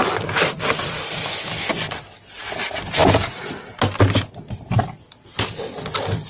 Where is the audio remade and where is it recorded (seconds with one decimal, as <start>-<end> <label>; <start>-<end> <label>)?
0.0-6.3 recorded